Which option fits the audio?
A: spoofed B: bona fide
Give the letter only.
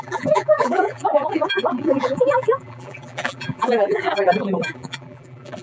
A